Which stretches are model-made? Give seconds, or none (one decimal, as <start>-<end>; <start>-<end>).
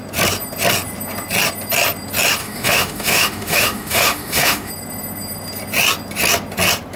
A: 2.4-4.7